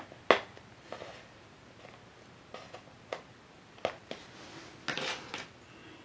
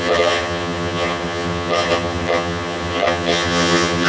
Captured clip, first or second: first